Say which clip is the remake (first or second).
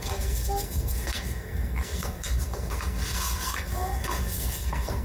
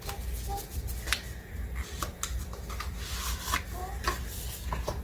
first